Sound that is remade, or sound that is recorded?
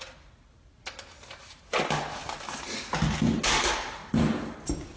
recorded